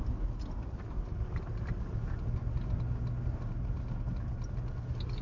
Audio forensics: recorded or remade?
recorded